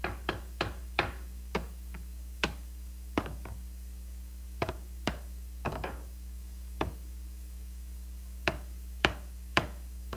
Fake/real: fake